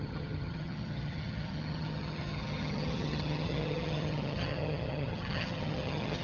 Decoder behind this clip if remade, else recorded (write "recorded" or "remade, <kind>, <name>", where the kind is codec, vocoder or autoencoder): remade, vocoder, HiFi-GAN